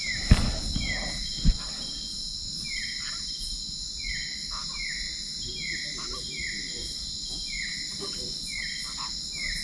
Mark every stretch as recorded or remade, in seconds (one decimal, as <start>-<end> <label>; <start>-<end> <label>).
0.0-9.6 recorded